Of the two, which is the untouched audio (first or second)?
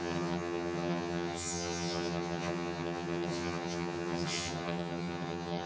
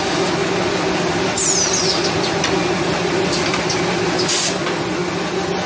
second